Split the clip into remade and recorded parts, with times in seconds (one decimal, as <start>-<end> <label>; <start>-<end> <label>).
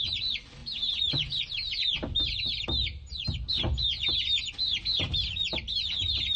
0.0-6.4 recorded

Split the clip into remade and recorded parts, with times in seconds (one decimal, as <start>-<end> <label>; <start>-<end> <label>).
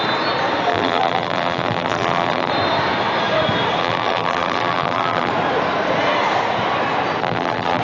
0.0-0.7 recorded; 0.7-2.5 remade; 2.5-3.8 recorded; 3.8-5.3 remade; 5.3-7.2 recorded; 7.2-7.8 remade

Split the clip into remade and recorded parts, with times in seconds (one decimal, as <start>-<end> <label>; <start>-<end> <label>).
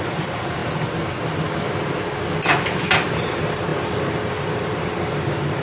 0.0-0.6 remade; 0.6-3.1 recorded; 3.1-5.6 remade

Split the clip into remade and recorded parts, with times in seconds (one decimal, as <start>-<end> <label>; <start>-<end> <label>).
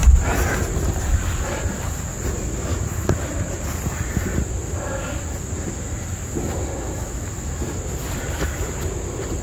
0.0-9.4 recorded